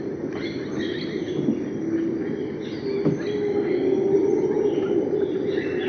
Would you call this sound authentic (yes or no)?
yes